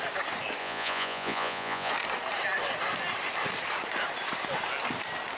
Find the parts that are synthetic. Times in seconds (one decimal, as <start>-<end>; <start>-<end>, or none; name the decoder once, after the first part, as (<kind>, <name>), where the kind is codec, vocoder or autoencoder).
0.6-1.9 (vocoder, Vocos)